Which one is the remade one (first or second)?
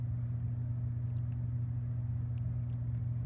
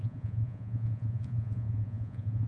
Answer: second